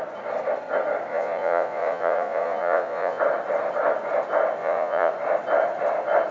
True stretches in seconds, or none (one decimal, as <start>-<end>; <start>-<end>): 0.0-1.1; 3.2-4.6; 5.1-6.3